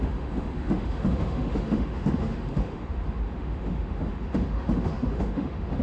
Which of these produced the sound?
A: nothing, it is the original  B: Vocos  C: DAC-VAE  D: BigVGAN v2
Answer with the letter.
C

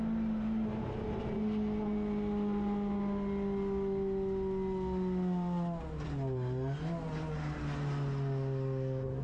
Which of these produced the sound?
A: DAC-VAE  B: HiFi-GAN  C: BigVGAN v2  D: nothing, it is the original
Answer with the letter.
D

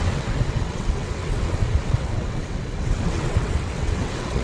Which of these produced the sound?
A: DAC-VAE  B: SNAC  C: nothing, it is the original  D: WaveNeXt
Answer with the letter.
D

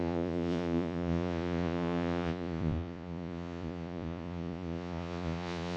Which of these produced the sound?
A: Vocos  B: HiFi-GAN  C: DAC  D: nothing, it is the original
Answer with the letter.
A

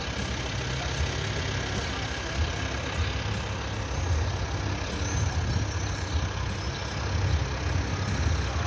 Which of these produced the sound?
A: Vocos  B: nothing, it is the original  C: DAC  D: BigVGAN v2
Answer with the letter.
B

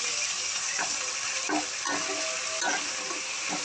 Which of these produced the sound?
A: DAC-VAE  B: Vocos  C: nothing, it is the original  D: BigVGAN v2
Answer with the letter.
D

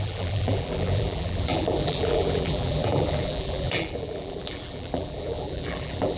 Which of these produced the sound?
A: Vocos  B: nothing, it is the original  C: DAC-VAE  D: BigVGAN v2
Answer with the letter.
D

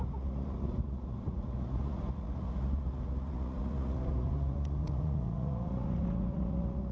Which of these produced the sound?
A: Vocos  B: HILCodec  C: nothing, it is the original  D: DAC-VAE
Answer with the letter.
A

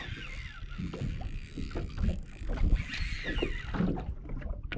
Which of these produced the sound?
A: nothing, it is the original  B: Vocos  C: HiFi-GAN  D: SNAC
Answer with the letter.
A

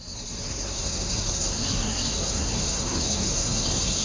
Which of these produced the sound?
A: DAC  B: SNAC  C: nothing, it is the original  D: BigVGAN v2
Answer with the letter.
B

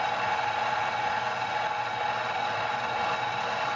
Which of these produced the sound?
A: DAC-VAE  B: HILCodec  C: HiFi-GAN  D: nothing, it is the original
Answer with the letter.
D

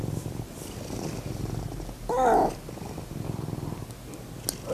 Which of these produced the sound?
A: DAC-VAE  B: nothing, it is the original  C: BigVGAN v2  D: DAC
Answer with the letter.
B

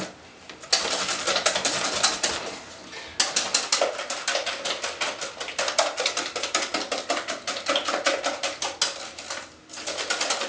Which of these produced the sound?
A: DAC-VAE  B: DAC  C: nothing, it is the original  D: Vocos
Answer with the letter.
C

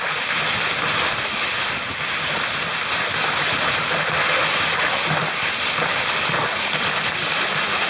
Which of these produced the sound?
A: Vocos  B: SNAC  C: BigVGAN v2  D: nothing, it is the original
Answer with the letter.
D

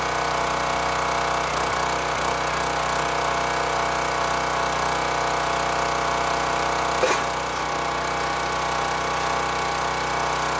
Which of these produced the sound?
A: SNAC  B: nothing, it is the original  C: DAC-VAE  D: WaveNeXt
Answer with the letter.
B